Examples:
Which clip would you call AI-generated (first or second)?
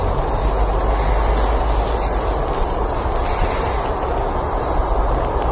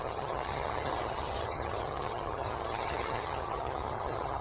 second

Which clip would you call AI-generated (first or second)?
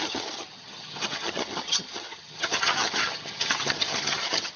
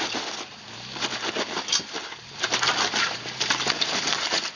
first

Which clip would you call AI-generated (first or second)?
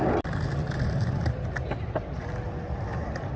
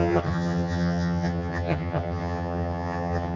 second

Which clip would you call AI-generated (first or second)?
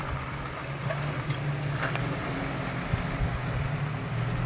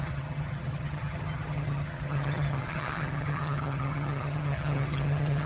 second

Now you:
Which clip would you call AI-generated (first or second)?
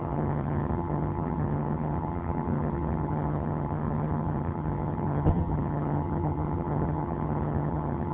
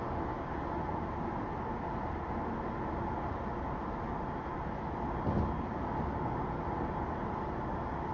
first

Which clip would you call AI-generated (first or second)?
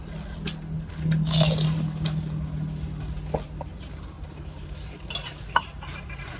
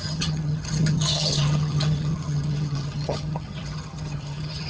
second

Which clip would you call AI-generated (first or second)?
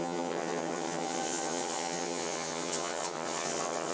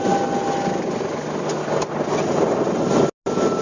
first